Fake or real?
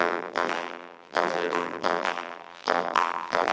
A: fake